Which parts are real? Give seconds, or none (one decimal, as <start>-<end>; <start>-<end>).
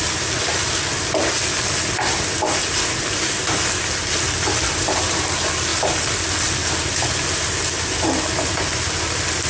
0.0-9.5